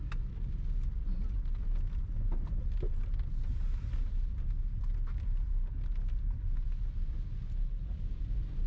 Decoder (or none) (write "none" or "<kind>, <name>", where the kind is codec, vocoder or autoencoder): none